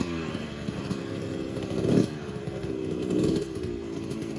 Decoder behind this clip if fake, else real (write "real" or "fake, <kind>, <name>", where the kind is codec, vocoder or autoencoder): fake, codec, SNAC